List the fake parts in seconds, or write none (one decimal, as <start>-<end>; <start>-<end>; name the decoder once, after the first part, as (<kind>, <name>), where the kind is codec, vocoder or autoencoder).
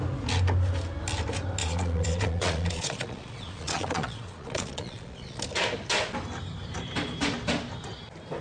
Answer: 1.6-5.4 (vocoder, Vocos)